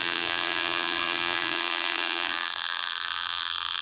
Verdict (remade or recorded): remade